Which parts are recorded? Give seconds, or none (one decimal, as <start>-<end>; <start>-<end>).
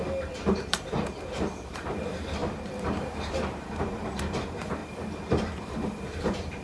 0.0-0.5; 4.8-5.4